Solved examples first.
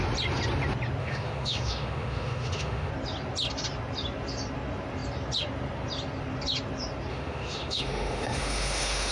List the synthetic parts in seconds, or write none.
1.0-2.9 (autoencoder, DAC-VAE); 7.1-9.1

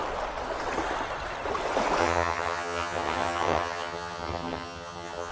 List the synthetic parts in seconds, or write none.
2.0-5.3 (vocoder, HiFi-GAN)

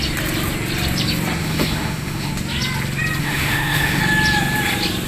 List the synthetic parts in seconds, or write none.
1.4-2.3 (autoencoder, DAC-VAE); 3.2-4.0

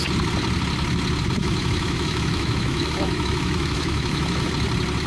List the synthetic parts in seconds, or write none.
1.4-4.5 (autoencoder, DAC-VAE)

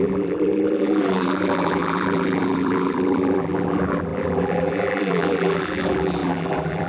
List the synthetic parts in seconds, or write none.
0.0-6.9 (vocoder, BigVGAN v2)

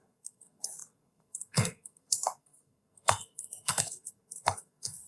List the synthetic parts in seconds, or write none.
0.0-5.1 (codec, SNAC)

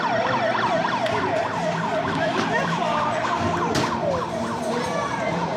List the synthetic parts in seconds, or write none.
none

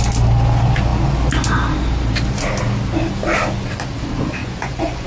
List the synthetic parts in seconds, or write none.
4.4-5.1 (vocoder, Vocos)